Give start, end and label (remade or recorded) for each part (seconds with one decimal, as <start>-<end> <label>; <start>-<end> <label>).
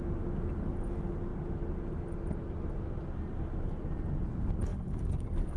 0.0-4.7 recorded; 4.7-5.6 remade